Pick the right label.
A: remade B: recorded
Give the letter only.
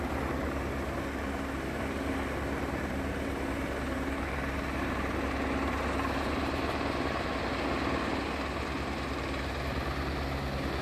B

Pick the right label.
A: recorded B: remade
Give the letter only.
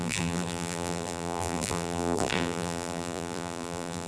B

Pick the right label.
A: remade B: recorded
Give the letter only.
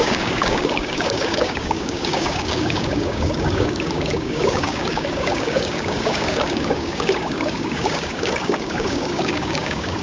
A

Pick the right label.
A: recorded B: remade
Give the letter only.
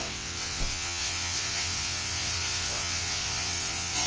B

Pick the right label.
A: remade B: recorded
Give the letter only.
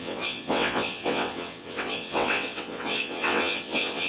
A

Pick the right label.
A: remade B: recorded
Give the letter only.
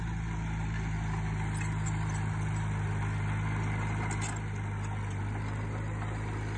B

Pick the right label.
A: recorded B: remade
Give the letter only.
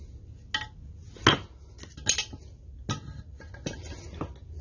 A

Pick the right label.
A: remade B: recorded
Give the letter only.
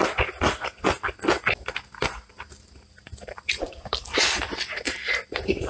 B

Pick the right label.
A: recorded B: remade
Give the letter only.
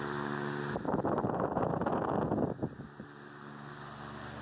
A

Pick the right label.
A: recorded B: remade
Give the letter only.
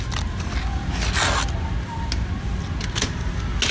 A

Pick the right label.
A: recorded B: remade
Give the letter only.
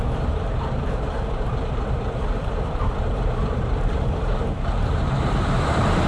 B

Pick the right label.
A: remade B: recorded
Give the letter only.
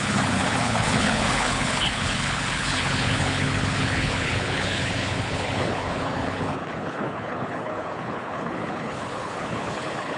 A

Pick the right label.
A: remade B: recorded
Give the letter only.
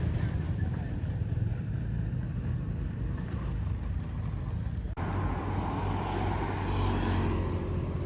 B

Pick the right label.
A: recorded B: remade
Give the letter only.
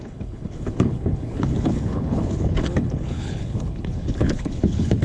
B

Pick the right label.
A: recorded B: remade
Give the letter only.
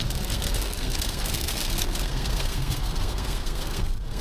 B